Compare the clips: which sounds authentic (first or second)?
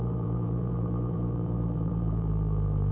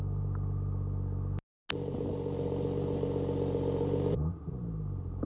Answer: second